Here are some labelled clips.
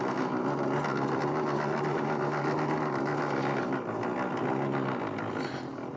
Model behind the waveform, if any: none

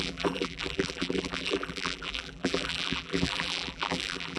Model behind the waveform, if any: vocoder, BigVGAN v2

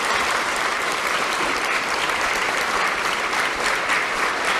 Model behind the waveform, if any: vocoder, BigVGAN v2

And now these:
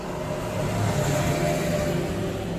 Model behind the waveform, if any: none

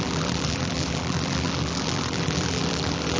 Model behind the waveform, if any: vocoder, BigVGAN v2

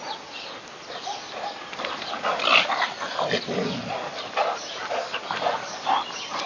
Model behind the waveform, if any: none